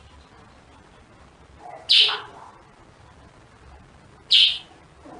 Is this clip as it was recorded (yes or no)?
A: yes